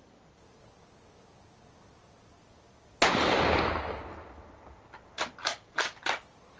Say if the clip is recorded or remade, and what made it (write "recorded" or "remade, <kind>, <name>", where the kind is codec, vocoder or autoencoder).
recorded